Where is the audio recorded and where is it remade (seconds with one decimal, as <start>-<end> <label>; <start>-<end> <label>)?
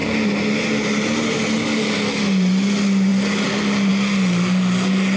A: 0.0-5.2 recorded